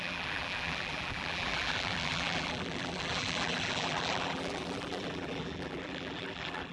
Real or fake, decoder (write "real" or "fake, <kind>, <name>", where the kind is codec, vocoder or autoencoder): fake, vocoder, BigVGAN v2